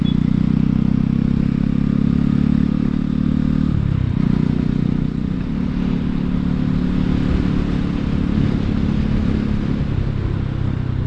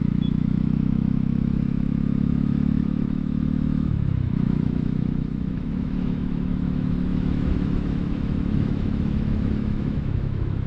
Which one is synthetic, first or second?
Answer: second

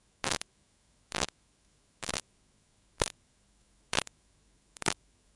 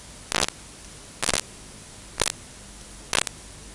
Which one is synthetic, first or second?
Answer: first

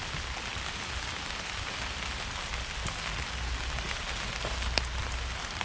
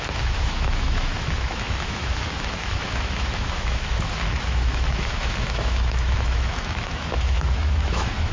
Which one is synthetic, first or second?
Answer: second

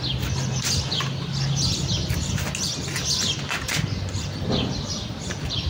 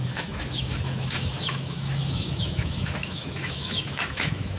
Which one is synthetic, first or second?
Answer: second